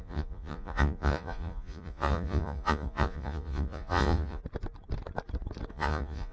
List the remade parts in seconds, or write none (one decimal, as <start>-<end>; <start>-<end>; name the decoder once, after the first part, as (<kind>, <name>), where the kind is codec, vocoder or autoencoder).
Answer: 0.0-4.4 (vocoder, Vocos); 5.7-6.3

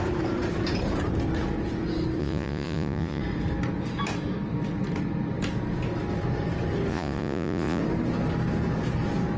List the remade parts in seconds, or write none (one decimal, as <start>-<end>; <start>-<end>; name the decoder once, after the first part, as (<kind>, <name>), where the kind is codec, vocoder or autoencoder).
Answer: 2.2-3.2 (vocoder, Vocos); 6.9-7.8

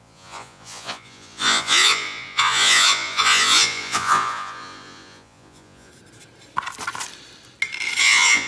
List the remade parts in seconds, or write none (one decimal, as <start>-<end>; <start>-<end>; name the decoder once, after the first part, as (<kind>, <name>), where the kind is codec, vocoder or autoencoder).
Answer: 0.0-5.9 (vocoder, Vocos); 8.0-8.5